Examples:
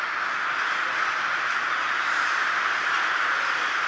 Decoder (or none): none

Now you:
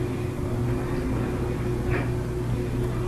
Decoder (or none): none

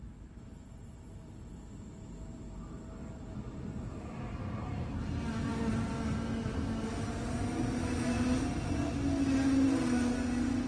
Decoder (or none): none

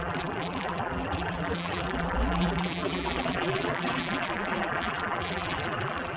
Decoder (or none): vocoder, BigVGAN v2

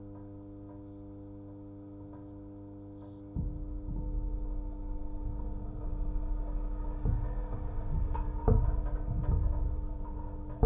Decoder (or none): none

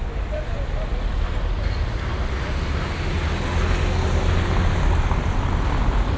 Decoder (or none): none